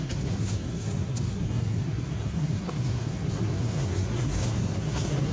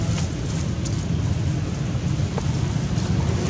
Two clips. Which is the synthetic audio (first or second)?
first